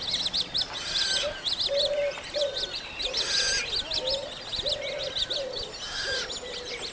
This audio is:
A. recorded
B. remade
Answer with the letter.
A